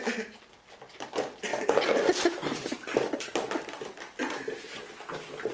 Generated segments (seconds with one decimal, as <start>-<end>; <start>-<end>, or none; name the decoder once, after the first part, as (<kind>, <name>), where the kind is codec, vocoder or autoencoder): none